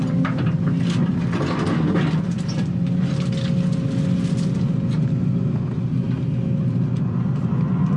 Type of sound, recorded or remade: recorded